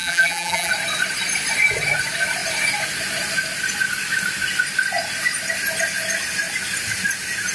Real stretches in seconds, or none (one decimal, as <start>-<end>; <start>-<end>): 0.7-7.5